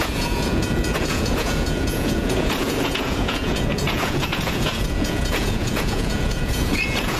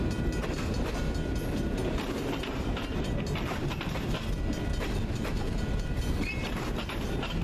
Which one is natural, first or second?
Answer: second